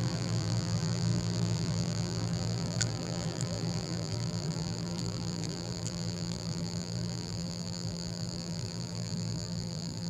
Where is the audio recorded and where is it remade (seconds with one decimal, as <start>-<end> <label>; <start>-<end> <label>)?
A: 0.0-10.1 remade